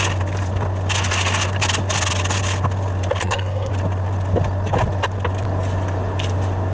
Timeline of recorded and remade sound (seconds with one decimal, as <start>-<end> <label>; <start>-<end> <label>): 0.0-3.2 recorded; 3.2-3.7 remade; 3.7-6.7 recorded